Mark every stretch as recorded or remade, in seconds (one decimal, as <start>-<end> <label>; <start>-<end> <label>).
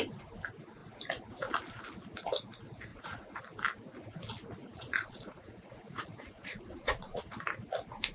0.0-2.9 recorded; 2.9-3.4 remade; 3.4-4.6 recorded; 4.6-7.2 remade; 7.2-8.1 recorded